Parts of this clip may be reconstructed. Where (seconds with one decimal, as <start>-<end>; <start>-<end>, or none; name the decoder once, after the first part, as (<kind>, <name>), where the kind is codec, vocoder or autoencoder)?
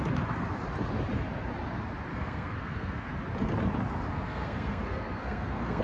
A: 2.1-3.1 (codec, SNAC); 4.1-5.8